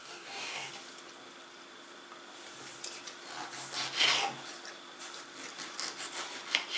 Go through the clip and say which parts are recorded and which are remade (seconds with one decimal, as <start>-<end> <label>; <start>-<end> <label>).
0.0-0.7 remade; 0.7-6.8 recorded